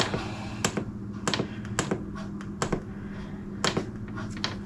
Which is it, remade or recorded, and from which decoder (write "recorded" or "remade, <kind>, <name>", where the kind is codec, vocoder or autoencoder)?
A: recorded